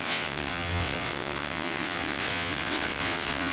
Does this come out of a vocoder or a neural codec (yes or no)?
yes